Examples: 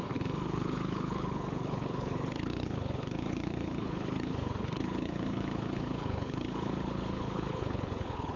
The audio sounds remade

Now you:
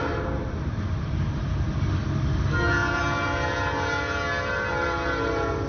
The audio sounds recorded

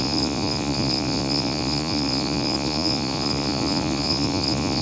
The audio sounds remade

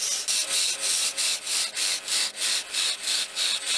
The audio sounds recorded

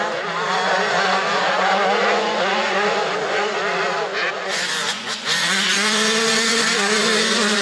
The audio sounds remade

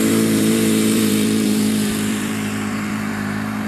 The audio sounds remade